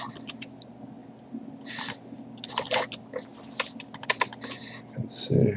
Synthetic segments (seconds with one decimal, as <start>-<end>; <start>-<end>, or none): none